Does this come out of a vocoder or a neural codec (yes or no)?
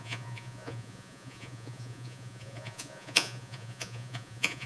yes